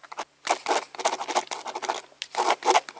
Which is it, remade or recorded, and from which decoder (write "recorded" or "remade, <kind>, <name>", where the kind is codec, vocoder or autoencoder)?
recorded